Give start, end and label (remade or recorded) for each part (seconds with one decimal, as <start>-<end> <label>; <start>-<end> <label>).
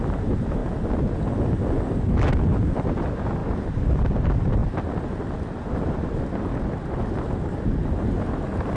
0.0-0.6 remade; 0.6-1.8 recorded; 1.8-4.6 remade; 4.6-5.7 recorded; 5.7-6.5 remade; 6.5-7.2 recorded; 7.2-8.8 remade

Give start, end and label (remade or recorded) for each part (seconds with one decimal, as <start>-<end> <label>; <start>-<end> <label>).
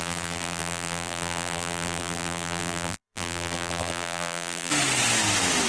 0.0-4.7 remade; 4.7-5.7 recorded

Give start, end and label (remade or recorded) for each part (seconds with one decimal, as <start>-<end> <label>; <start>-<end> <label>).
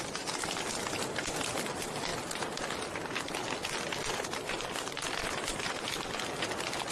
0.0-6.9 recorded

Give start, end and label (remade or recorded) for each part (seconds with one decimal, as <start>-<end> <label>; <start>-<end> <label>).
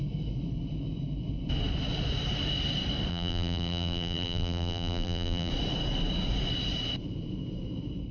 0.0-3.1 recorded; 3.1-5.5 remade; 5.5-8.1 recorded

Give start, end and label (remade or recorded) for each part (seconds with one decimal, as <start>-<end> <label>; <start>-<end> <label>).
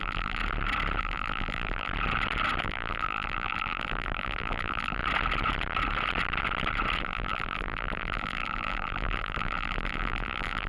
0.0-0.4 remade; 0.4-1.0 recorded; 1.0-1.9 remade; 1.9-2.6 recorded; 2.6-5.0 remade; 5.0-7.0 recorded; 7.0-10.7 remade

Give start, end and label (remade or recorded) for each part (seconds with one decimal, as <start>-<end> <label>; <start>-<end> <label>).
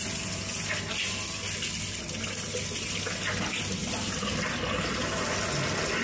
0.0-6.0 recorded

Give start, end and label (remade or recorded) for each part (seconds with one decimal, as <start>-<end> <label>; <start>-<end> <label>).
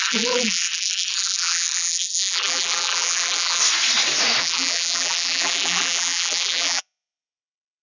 0.0-3.6 remade; 3.6-4.4 recorded; 4.4-7.8 remade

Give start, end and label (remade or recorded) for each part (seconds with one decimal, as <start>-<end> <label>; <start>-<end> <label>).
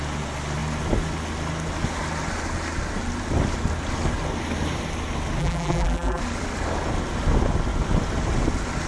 0.0-5.4 recorded; 5.4-6.2 remade; 6.2-8.9 recorded